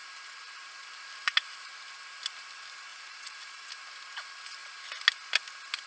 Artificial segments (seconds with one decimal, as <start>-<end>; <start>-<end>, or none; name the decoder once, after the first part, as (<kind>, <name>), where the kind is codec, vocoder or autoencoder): 2.9-3.7 (vocoder, Vocos)